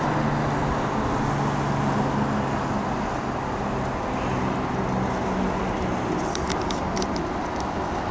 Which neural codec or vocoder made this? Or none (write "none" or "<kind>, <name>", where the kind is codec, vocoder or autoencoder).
none